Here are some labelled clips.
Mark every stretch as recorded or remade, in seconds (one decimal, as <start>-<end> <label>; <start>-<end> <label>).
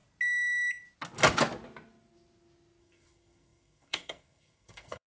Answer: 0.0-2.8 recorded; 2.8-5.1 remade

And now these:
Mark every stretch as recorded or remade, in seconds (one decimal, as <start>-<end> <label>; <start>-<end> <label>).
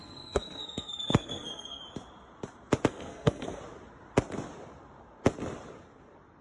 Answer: 0.0-1.8 remade; 1.8-2.9 recorded; 2.9-3.6 remade; 3.6-6.4 recorded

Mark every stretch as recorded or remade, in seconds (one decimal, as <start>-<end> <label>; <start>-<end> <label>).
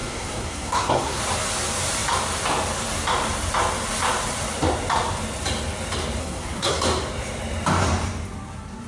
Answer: 0.0-1.2 remade; 1.2-6.2 recorded; 6.2-6.8 remade; 6.8-8.9 recorded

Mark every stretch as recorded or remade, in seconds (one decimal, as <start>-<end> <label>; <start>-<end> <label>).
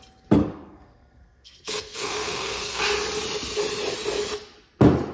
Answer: 0.0-0.4 recorded; 0.4-2.8 remade; 2.8-5.1 recorded